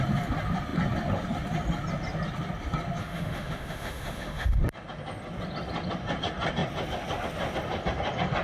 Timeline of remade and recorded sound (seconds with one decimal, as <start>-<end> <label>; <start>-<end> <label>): 0.0-3.0 recorded; 3.0-4.6 remade; 4.6-8.4 recorded